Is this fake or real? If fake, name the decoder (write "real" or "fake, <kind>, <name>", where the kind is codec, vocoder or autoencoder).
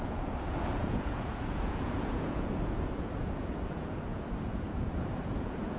fake, vocoder, Vocos